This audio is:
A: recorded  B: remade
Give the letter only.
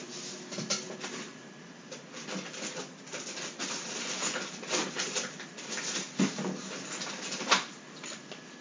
A